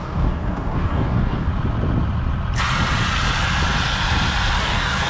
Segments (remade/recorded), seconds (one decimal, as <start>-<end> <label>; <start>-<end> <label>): 0.0-1.5 remade; 1.5-4.6 recorded; 4.6-5.1 remade